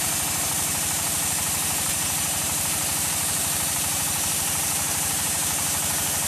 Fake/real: fake